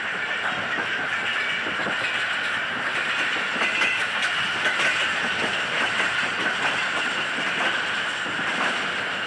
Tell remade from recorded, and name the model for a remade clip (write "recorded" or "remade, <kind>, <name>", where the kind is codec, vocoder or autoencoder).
recorded